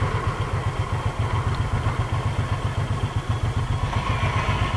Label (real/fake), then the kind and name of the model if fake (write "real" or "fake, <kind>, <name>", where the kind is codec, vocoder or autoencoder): real